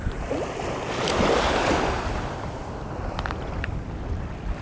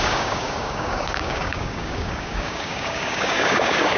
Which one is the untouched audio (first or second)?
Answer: first